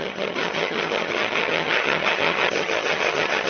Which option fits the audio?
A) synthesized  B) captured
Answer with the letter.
A